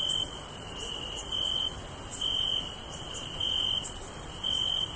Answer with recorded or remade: recorded